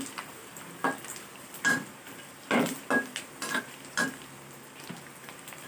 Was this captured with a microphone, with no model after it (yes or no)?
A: yes